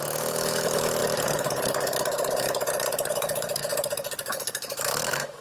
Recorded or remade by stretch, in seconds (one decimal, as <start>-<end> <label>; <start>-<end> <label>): 0.0-1.0 remade; 1.0-3.1 recorded; 3.1-3.7 remade; 3.7-4.3 recorded; 4.3-5.4 remade